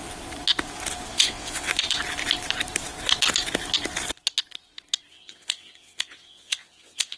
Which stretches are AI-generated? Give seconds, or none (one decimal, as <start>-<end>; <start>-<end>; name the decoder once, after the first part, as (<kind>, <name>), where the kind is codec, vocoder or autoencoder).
1.1-1.7 (vocoder, WaveNeXt); 5.1-7.2